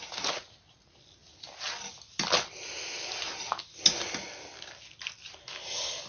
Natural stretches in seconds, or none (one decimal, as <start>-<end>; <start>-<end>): 0.0-6.1